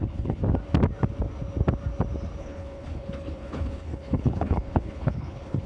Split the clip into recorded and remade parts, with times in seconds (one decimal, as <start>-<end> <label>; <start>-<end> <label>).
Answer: 0.0-0.4 remade; 0.4-2.4 recorded; 2.4-5.7 remade